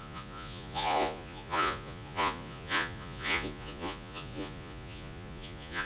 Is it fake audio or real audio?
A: fake